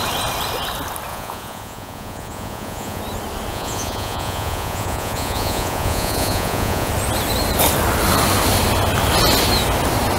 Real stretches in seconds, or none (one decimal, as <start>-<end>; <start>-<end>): 0.0-1.1; 3.0-3.5; 6.9-10.2

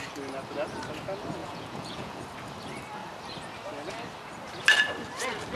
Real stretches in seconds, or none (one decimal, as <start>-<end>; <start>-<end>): 0.0-1.4; 2.2-5.6